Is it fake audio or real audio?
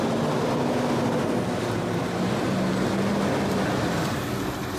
real